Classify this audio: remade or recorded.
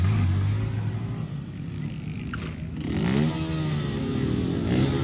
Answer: recorded